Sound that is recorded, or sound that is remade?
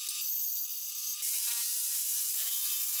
recorded